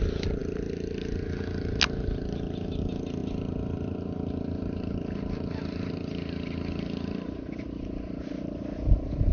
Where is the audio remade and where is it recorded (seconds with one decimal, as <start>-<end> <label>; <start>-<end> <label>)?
0.0-9.3 recorded